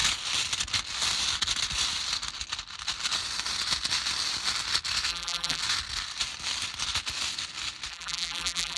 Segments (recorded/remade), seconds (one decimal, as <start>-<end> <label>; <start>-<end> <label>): 0.0-5.1 recorded; 5.1-5.6 remade; 5.6-7.9 recorded; 7.9-8.8 remade